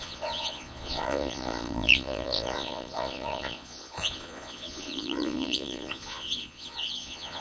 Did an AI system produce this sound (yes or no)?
yes